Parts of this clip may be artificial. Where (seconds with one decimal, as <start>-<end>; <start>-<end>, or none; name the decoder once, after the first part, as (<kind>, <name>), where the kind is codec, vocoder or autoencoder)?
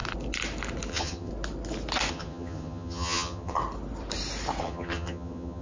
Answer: 0.9-1.3 (vocoder, HiFi-GAN); 2.1-3.6; 4.6-5.6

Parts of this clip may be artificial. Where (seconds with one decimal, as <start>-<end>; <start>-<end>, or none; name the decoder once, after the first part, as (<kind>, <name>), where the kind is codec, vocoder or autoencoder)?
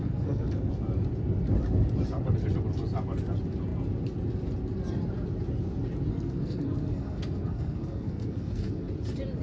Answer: 0.0-0.7 (codec, SNAC); 6.1-8.9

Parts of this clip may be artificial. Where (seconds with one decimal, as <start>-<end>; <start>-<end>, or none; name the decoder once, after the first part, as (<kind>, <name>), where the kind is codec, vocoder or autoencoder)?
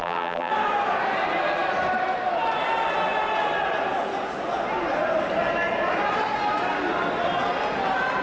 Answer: 0.0-0.5 (vocoder, BigVGAN v2)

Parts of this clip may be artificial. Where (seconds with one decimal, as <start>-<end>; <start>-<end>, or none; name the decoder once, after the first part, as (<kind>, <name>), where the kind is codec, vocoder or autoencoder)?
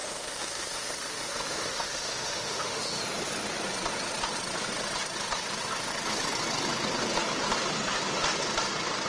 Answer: 0.0-3.0 (autoencoder, DAC-VAE)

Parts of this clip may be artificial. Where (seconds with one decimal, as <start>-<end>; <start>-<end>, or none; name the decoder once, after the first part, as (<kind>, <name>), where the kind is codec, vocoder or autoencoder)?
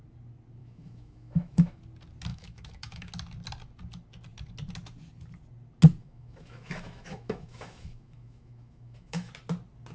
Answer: 0.6-1.8 (autoencoder, DAC-VAE); 2.3-3.1; 6.0-9.3